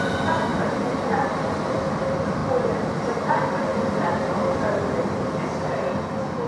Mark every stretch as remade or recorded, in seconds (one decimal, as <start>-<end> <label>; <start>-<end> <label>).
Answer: 0.0-6.5 recorded